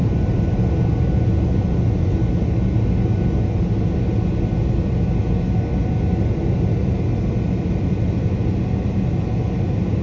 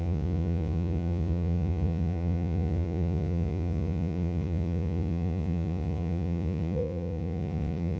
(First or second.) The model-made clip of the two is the second